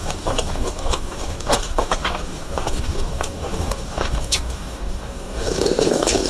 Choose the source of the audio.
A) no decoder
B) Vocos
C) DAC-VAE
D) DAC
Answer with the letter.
D